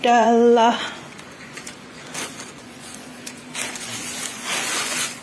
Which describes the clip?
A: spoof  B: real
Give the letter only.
A